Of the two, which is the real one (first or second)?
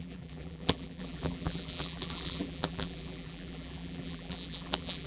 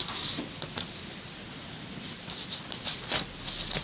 second